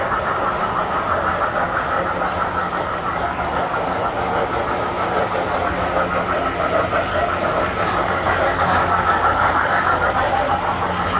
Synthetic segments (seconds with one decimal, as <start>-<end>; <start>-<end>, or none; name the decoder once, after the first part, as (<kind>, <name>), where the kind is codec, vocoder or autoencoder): 2.6-4.1 (codec, DAC); 7.1-10.1